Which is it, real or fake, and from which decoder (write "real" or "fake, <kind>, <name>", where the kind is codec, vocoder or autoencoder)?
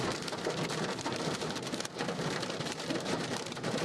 fake, vocoder, BigVGAN v2